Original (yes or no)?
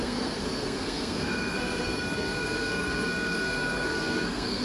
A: no